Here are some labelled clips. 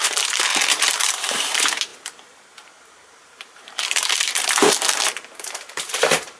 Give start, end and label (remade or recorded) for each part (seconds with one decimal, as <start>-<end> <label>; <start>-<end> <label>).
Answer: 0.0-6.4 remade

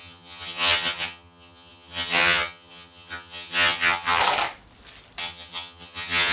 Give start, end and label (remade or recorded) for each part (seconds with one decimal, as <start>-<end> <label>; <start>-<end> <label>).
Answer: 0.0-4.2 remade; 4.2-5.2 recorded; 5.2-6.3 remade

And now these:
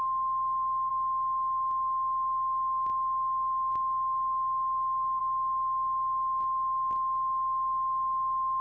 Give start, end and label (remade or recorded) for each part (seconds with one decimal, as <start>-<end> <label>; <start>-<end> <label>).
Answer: 0.0-8.6 recorded

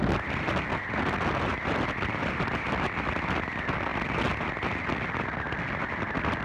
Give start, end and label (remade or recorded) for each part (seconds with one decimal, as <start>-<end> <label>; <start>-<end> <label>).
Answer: 0.0-1.5 recorded; 1.5-2.3 remade; 2.3-6.4 recorded

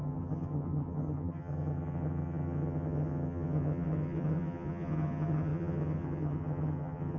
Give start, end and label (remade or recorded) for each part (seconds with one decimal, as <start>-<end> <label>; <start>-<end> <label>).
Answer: 0.0-7.2 remade

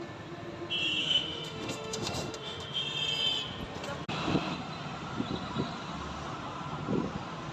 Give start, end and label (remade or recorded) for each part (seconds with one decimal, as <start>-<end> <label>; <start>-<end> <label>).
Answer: 0.0-1.0 recorded; 1.0-2.8 remade; 2.8-7.5 recorded

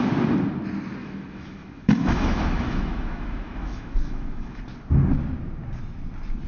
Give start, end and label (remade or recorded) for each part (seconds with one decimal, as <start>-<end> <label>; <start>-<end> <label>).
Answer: 0.0-1.0 recorded; 1.0-4.6 remade; 4.6-6.5 recorded